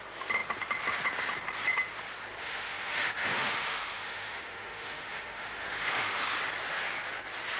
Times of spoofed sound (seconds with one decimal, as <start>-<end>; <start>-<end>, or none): 2.4-6.2